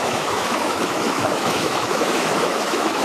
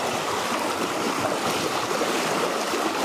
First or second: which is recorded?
second